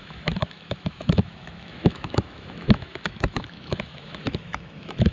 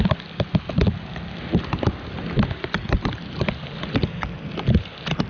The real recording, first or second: second